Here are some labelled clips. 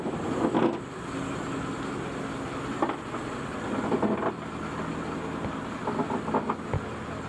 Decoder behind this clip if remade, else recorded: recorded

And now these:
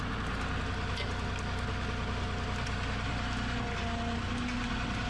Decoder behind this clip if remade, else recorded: recorded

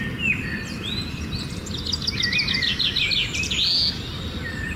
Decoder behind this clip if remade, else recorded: recorded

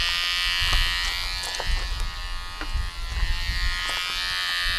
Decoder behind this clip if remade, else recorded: recorded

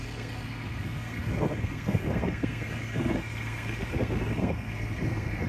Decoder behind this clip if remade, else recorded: remade, codec, SNAC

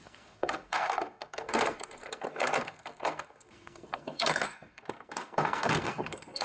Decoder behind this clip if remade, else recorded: remade, codec, SNAC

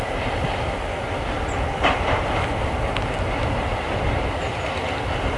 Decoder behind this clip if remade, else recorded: recorded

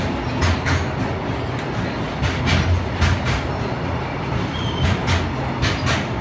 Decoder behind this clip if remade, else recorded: recorded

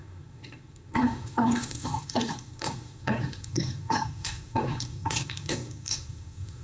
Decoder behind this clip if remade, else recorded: remade, codec, SNAC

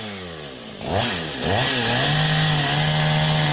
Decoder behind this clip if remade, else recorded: recorded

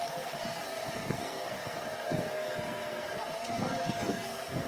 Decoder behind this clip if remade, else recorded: remade, codec, SNAC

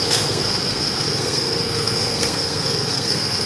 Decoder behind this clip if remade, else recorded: remade, codec, SNAC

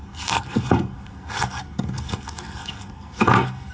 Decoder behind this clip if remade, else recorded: remade, codec, SNAC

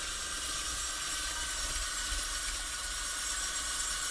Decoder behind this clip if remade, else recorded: recorded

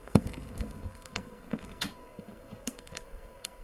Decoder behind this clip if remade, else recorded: remade, codec, SNAC